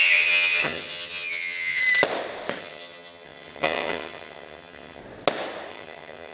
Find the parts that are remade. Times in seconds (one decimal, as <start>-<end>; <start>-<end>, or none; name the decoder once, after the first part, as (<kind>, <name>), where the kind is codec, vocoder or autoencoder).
0.0-1.8 (vocoder, HiFi-GAN); 2.6-5.0; 5.7-6.3

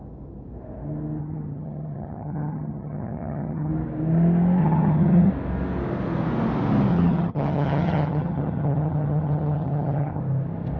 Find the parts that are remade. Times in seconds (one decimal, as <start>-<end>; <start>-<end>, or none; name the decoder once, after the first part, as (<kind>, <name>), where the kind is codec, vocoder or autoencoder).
1.2-3.7 (vocoder, HiFi-GAN); 4.6-5.3; 6.9-10.2

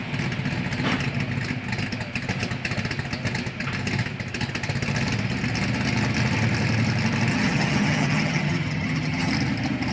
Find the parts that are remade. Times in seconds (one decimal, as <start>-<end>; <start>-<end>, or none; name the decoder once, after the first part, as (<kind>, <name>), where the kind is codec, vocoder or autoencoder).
7.3-9.3 (vocoder, HiFi-GAN)

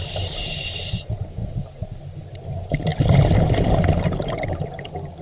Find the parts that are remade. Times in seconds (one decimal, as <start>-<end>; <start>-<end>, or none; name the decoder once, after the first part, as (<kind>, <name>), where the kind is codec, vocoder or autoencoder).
none

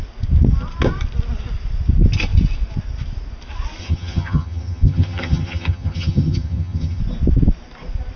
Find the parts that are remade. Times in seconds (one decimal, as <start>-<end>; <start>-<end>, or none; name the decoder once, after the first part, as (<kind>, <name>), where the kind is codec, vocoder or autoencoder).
3.8-7.0 (vocoder, HiFi-GAN)

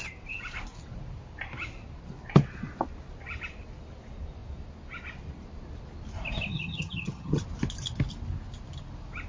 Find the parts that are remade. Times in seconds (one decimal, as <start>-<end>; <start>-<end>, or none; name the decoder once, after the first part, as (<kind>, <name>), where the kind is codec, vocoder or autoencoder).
6.5-7.4 (vocoder, HiFi-GAN)

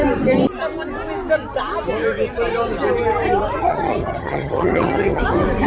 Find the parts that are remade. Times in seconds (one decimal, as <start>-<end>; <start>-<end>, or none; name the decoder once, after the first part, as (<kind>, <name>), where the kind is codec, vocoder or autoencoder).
3.6-5.2 (vocoder, HiFi-GAN)

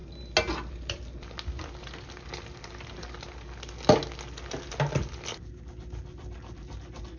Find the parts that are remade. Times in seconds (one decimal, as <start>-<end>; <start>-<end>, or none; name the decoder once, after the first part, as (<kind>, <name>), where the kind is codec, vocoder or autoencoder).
none